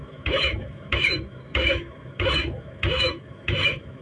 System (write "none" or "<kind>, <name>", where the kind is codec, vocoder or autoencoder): autoencoder, DAC-VAE